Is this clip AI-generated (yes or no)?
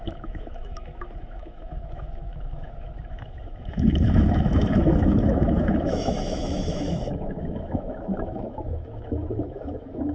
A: yes